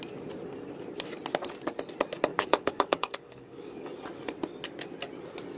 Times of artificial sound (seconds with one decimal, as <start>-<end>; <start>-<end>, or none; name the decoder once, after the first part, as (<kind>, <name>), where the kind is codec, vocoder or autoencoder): 2.3-3.9 (codec, DAC)